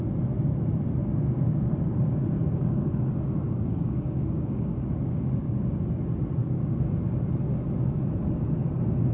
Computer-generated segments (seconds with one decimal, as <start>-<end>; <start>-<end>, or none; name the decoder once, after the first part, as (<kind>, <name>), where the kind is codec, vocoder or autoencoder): 1.0-5.7 (codec, DAC); 6.4-6.9; 7.5-8.0